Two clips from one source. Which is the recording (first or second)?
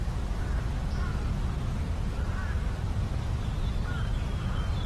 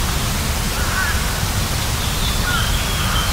second